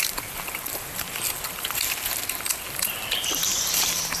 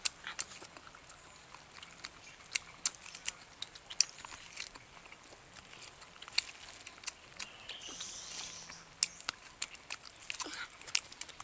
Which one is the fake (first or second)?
first